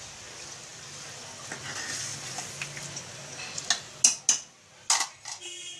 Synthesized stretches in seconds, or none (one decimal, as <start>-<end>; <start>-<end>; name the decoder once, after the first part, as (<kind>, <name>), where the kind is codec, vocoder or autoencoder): none